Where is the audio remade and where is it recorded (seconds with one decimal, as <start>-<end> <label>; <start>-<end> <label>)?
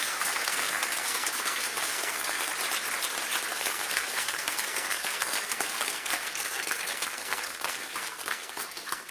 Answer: 0.0-2.5 remade; 2.5-3.5 recorded; 3.5-9.1 remade